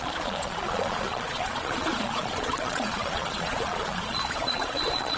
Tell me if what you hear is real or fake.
fake